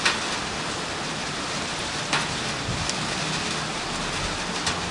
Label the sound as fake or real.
real